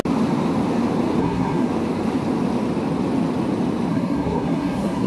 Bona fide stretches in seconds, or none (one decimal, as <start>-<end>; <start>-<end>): 0.0-1.2; 1.7-3.9